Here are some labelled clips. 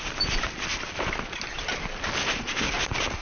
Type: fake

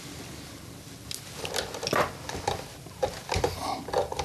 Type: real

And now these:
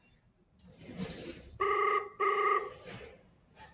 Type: fake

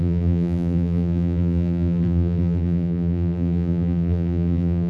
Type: fake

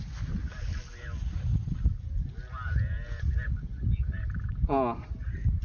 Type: real